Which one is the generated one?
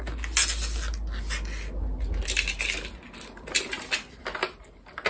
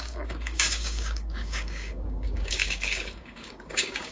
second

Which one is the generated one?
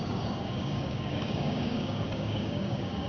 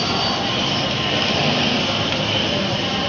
first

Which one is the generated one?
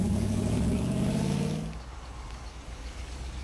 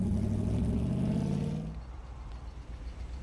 first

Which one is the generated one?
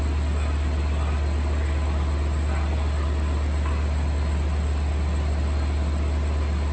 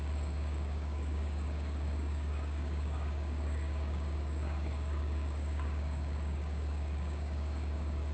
second